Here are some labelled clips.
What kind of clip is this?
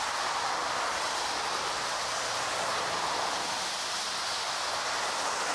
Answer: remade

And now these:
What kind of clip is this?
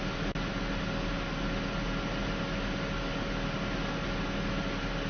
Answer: recorded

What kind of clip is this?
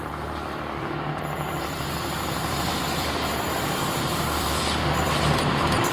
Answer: remade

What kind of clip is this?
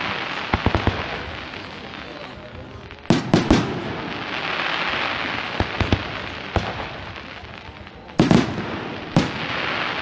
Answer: recorded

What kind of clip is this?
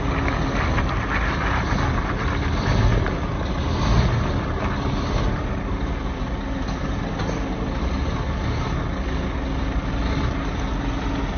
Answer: recorded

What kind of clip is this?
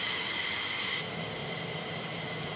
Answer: recorded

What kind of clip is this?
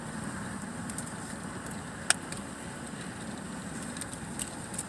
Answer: recorded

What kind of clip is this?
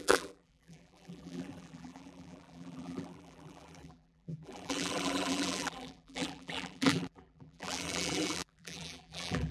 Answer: remade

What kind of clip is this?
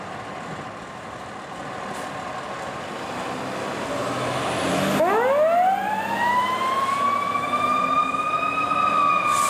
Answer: recorded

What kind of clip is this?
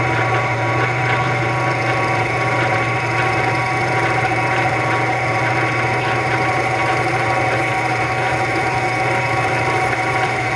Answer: remade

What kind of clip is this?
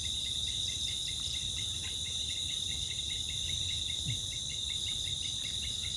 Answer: remade